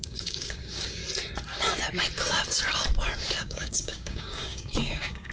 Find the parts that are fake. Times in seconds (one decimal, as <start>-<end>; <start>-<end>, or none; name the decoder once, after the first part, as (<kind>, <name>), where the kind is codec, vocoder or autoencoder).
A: 0.0-1.0 (codec, DAC); 3.4-5.3